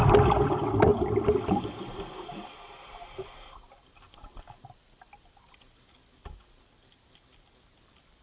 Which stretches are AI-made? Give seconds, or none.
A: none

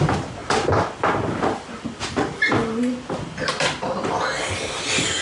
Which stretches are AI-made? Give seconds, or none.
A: none

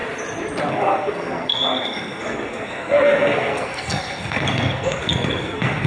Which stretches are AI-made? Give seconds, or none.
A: 0.7-5.9 (codec, SNAC)